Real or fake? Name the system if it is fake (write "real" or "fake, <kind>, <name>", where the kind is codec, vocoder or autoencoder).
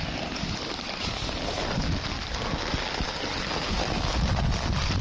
real